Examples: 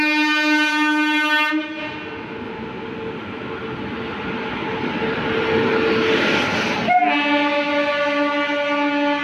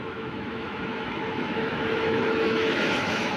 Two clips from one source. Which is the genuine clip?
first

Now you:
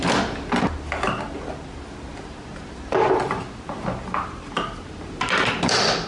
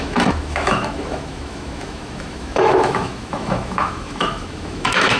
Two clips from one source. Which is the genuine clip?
first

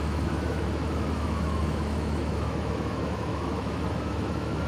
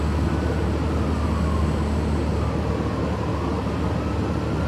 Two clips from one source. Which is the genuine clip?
second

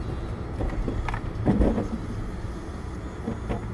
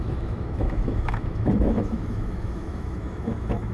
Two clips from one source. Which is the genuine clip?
first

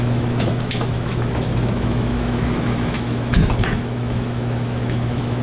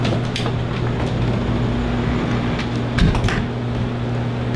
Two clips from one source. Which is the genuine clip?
second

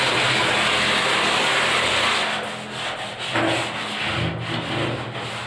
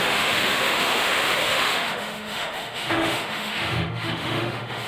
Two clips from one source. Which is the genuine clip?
first